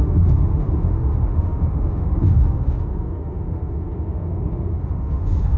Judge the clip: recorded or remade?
remade